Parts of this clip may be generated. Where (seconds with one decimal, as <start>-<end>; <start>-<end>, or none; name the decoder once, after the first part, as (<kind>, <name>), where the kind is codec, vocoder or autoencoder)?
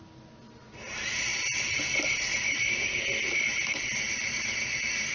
none